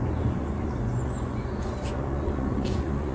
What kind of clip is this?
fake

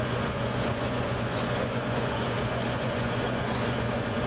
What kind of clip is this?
fake